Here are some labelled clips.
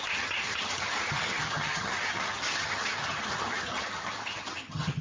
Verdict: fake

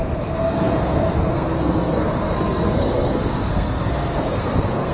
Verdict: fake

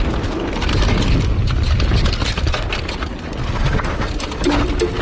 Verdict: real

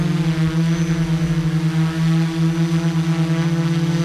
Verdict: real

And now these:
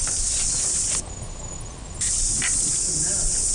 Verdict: real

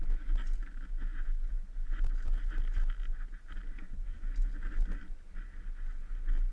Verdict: real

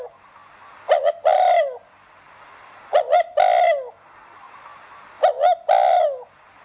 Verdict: real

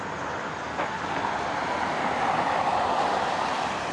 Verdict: real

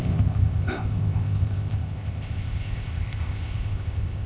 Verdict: fake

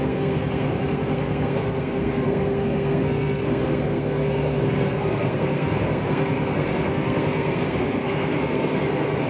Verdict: fake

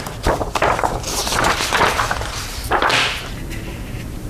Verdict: fake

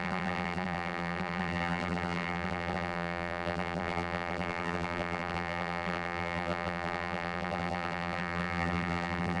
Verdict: fake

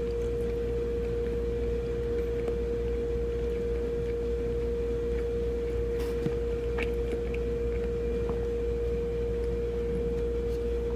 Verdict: real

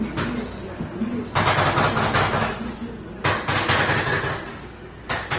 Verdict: real